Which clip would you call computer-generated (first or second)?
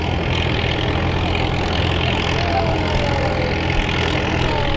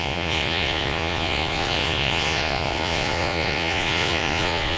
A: second